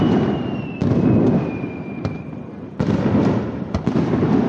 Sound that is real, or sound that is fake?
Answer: real